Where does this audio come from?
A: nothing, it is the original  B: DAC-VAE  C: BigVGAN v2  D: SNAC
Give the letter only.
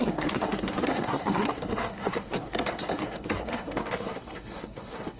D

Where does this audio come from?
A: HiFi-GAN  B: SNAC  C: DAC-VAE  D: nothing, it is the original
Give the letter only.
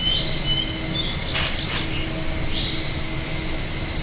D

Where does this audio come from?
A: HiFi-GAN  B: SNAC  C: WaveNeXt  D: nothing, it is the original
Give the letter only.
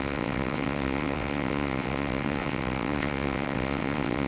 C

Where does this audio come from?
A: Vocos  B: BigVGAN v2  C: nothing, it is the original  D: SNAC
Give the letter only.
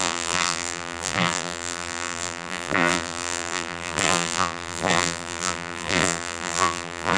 B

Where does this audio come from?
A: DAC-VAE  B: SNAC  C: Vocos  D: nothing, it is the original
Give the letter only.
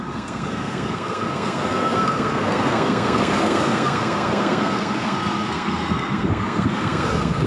B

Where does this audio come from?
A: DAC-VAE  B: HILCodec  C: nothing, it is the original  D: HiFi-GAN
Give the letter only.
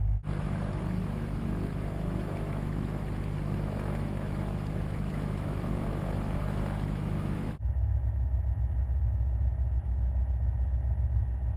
A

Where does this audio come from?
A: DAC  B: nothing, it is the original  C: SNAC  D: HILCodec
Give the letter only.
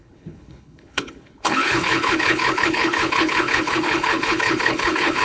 D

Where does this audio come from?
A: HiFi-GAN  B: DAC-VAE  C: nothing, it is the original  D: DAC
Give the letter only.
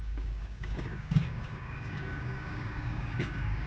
D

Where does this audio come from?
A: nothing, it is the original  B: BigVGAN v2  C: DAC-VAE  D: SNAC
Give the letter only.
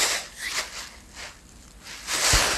A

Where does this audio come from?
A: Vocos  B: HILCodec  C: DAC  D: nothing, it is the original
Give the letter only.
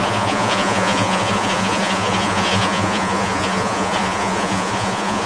A